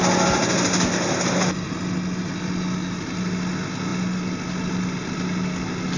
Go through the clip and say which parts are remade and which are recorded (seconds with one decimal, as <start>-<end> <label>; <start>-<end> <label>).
0.0-6.0 recorded